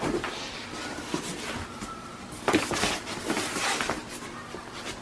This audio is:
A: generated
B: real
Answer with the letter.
B